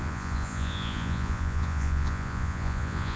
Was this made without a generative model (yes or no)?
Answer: no